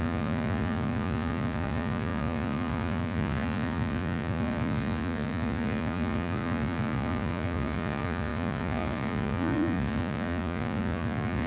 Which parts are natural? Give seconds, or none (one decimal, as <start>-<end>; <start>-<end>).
none